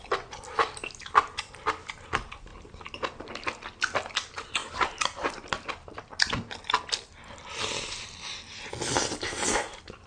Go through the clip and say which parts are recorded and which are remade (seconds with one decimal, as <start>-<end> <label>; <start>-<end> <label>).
0.0-10.1 recorded